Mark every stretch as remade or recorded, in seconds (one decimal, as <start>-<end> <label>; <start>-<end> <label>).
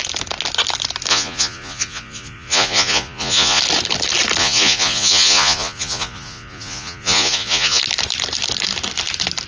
0.0-1.1 recorded; 1.1-3.6 remade; 3.6-4.4 recorded; 4.4-7.8 remade; 7.8-9.5 recorded